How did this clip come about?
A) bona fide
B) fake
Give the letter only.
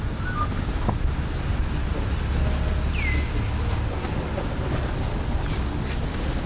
A